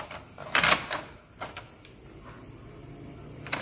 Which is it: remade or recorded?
recorded